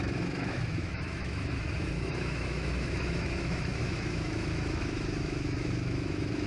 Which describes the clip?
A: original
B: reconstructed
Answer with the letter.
B